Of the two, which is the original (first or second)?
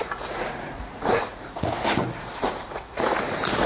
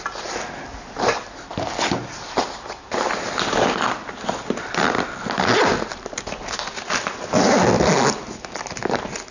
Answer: second